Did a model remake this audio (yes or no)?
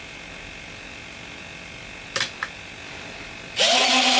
no